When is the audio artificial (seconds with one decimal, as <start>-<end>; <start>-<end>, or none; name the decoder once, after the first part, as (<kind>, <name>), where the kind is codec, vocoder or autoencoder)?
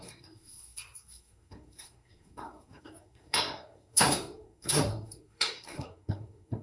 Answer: 0.0-6.6 (codec, SNAC)